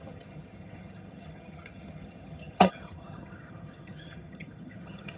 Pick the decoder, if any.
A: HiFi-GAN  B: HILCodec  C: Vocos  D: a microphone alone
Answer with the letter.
A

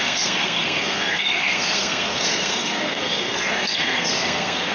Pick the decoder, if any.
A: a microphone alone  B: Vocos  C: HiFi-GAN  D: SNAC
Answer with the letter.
D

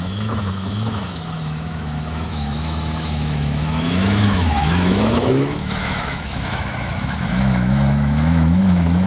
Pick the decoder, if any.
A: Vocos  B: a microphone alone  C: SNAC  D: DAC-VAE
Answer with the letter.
D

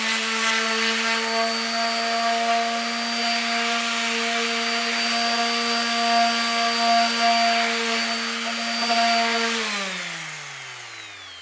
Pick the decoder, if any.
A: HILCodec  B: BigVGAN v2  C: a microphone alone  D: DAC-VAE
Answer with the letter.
C